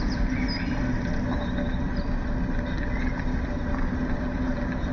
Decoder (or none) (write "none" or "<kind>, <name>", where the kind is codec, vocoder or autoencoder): none